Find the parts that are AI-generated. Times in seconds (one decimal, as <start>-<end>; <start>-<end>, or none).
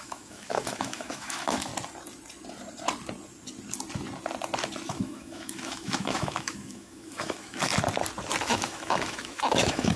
0.0-1.7; 4.9-7.7; 8.4-10.0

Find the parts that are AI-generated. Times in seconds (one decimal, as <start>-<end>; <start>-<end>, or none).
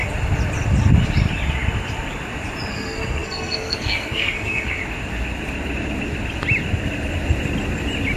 2.7-4.8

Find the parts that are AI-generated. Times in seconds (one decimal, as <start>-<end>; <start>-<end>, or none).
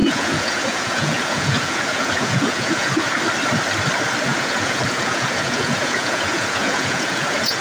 0.0-3.2; 4.3-7.6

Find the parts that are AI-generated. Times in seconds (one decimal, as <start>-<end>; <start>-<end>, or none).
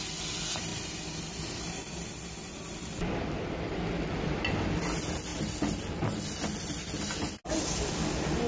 0.7-4.4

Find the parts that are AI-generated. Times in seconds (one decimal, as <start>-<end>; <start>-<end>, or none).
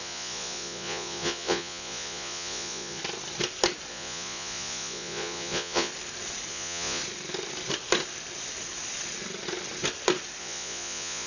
0.0-3.0; 3.9-5.9; 6.5-7.0; 10.4-11.3